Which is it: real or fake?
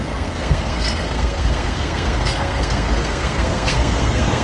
fake